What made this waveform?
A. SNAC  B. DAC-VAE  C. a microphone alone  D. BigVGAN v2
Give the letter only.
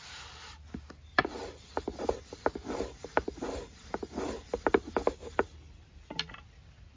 C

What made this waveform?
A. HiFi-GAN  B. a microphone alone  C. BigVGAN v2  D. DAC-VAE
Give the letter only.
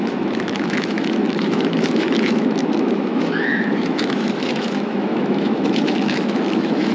D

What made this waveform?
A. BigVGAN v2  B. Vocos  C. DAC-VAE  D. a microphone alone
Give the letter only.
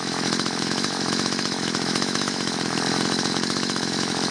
C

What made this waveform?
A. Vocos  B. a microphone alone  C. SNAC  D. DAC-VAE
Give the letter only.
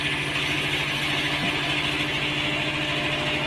B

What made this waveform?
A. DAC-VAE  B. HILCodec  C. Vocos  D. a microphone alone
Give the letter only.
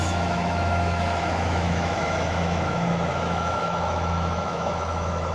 A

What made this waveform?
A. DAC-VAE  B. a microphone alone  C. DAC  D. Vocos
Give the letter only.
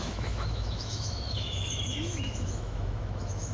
A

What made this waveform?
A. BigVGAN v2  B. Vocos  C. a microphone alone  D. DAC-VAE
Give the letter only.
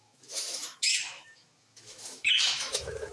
D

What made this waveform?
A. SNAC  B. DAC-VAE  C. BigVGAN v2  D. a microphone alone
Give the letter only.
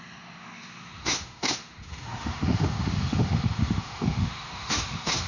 B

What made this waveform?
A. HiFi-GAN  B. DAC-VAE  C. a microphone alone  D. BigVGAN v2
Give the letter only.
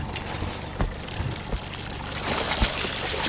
C